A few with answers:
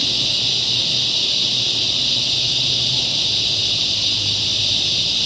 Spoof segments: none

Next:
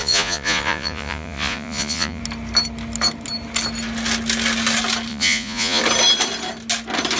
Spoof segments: 0.0-2.2; 5.1-5.8

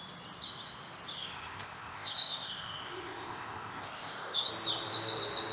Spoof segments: 1.2-4.5

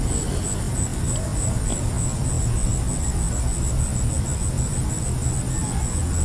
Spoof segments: none

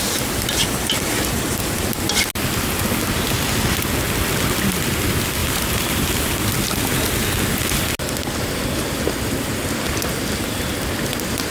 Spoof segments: 5.4-6.4

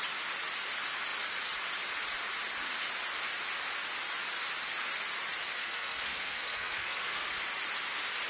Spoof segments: 5.6-7.3